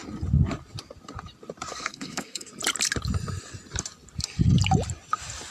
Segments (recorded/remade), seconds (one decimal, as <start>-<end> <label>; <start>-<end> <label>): 0.0-1.7 recorded; 1.7-2.5 remade; 2.5-5.5 recorded